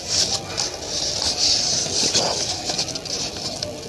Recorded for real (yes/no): yes